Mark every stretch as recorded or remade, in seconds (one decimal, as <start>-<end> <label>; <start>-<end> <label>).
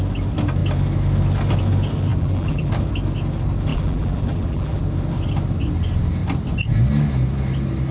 0.0-2.1 recorded; 2.1-2.7 remade; 2.7-3.7 recorded; 3.7-4.8 remade; 4.8-7.9 recorded